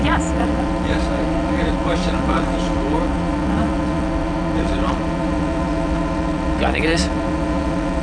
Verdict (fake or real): fake